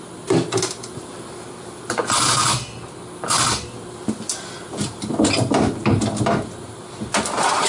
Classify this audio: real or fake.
real